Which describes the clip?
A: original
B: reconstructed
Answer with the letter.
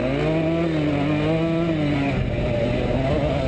A